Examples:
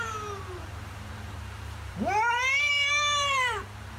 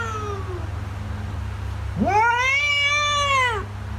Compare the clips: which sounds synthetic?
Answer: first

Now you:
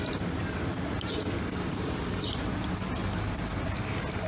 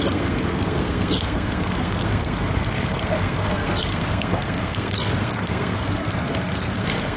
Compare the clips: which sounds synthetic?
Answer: second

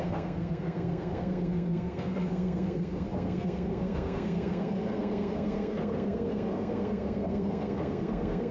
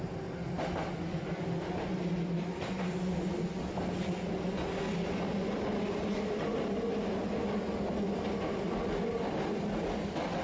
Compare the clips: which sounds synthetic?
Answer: first